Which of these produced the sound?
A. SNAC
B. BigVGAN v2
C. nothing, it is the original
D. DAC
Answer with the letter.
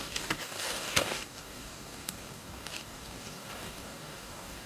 D